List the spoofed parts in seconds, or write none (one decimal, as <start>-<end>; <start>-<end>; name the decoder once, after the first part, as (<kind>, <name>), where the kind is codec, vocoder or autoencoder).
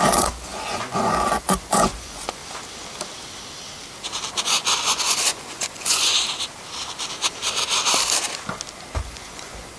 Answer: 0.0-2.4 (vocoder, Vocos); 4.4-6.1; 9.0-9.8